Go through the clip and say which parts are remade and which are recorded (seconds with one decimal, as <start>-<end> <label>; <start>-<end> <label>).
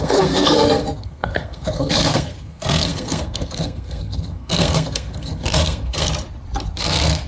0.0-6.1 remade; 6.1-6.8 recorded; 6.8-7.3 remade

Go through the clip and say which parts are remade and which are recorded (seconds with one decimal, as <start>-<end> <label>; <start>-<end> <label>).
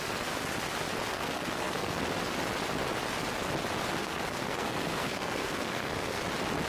0.0-1.1 recorded; 1.1-2.0 remade; 2.0-4.0 recorded; 4.0-6.2 remade; 6.2-6.7 recorded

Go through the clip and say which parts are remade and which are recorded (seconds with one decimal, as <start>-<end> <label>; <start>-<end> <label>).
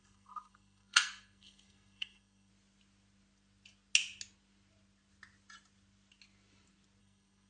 0.0-2.5 remade; 2.5-7.0 recorded; 7.0-7.5 remade